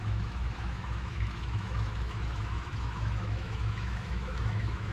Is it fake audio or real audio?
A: fake